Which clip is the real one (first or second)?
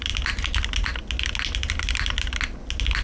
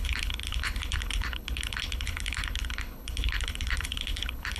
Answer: first